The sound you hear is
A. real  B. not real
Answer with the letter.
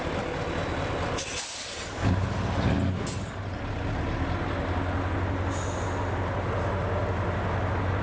A